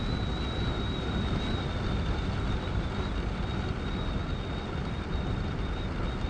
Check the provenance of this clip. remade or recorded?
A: recorded